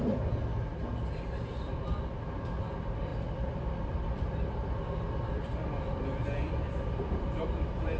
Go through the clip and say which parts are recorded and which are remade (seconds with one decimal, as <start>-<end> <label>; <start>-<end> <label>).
0.0-0.7 recorded; 0.7-2.2 remade; 2.2-3.1 recorded; 3.1-8.0 remade